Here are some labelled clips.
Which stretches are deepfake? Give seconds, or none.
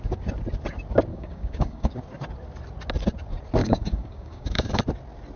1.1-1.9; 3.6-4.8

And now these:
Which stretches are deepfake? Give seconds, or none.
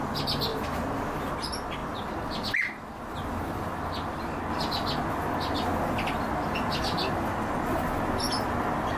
none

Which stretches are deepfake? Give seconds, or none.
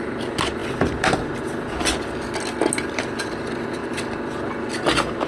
none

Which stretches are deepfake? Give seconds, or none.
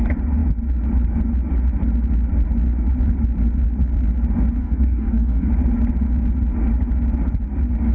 4.6-5.5